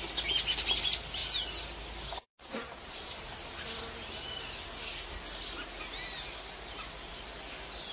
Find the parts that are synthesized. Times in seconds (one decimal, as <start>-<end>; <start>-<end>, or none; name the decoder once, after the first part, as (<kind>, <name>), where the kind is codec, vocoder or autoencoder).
none